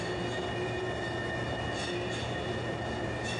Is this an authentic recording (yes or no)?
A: yes